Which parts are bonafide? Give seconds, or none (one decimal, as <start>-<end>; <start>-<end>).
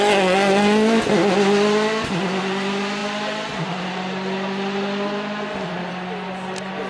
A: 0.0-6.9